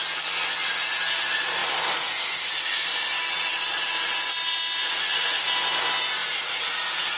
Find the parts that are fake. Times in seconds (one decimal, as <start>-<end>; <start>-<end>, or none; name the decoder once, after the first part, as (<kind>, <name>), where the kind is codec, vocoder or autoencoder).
none

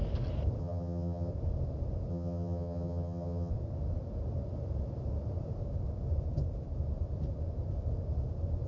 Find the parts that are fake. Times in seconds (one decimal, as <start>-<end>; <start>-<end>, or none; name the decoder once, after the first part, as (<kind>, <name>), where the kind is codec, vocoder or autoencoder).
0.6-1.3 (vocoder, HiFi-GAN); 2.1-3.5

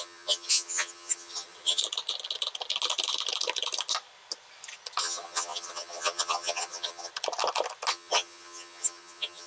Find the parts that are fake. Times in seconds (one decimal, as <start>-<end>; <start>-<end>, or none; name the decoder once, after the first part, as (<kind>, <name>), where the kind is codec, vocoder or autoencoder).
0.0-1.8 (vocoder, HiFi-GAN); 5.0-7.1; 7.9-9.5

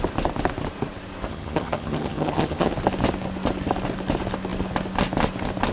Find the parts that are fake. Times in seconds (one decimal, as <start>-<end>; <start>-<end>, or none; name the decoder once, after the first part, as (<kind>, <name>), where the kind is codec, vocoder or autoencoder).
1.3-2.7 (vocoder, HiFi-GAN)

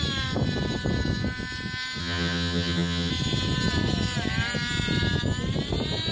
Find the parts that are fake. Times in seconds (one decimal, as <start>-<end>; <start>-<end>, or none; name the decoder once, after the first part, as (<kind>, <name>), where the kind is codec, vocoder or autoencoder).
2.0-3.1 (vocoder, HiFi-GAN)

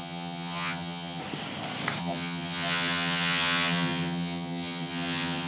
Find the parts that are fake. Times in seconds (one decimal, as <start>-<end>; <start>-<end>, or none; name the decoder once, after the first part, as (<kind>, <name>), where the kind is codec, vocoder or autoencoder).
0.0-1.2 (vocoder, HiFi-GAN); 2.0-5.5

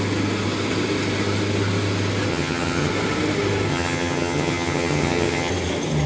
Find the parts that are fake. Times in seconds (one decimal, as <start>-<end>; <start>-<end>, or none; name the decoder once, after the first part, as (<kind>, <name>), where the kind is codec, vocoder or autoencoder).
2.3-2.9 (vocoder, HiFi-GAN); 3.7-5.5